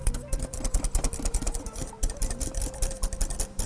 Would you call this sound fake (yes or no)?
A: yes